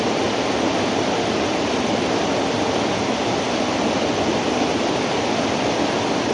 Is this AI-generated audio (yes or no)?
no